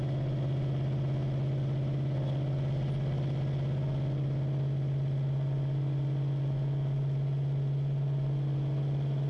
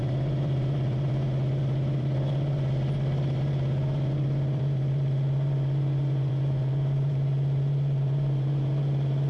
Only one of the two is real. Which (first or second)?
first